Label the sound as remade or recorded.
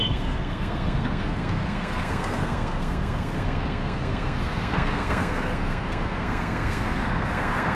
remade